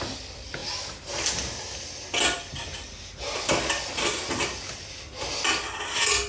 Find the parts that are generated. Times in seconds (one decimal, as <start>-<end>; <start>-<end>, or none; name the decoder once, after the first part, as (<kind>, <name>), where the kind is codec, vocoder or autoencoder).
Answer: none